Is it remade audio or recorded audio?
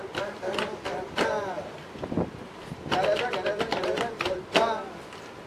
recorded